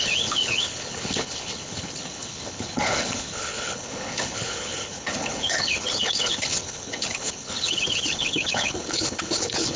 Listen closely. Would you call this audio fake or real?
fake